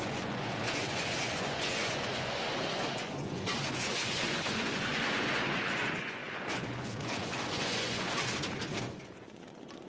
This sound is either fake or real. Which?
fake